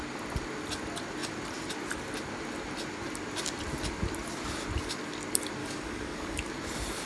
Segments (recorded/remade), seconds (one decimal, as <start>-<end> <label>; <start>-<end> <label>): 0.0-5.6 recorded; 5.6-6.5 remade; 6.5-7.1 recorded

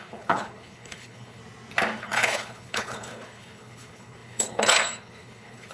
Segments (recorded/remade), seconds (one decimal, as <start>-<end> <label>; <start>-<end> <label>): 0.0-1.4 remade; 1.4-2.0 recorded; 2.0-5.7 remade

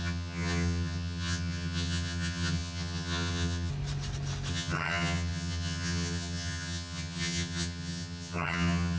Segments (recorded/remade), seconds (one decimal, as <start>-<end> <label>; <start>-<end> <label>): 0.0-3.7 remade; 3.7-4.5 recorded; 4.5-9.0 remade

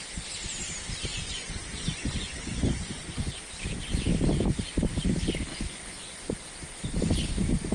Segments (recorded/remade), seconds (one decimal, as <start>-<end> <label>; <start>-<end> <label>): 0.0-1.1 recorded; 1.1-3.3 remade; 3.3-5.5 recorded; 5.5-6.3 remade; 6.3-7.7 recorded

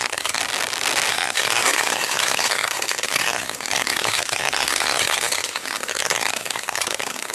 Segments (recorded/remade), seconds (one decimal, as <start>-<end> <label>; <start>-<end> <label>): 0.0-0.4 remade; 0.4-1.1 recorded; 1.1-7.3 remade

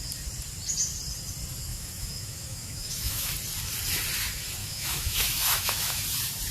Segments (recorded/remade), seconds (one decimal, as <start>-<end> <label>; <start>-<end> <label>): 0.0-1.7 recorded; 1.7-3.3 remade; 3.3-4.6 recorded; 4.6-6.0 remade; 6.0-6.5 recorded

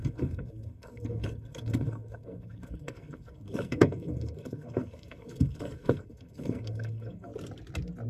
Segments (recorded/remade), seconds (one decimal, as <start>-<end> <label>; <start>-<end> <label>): 0.0-7.3 remade; 7.3-8.1 recorded